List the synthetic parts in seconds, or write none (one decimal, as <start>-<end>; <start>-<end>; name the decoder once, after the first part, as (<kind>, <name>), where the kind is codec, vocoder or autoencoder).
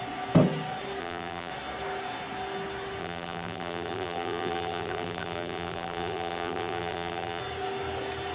1.0-1.5 (vocoder, BigVGAN v2); 3.0-7.4